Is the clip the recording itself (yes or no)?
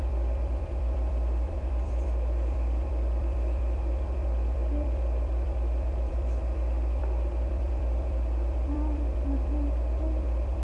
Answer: no